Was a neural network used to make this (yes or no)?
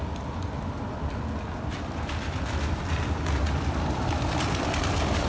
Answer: no